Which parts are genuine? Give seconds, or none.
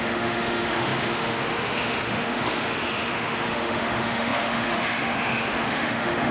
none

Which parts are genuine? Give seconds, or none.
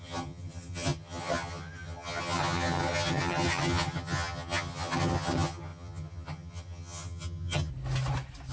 7.7-8.5